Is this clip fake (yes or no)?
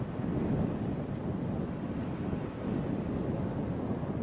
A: no